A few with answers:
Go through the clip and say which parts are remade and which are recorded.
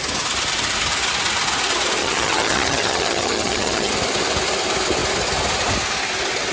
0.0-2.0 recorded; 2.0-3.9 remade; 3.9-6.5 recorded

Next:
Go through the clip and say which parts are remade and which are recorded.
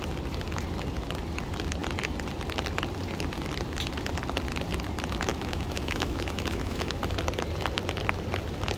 0.0-5.3 recorded; 5.3-7.0 remade; 7.0-8.8 recorded